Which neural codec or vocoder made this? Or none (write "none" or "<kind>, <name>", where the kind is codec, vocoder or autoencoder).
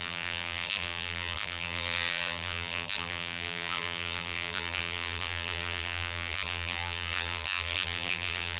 vocoder, BigVGAN v2